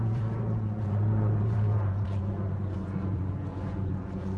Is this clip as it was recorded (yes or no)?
no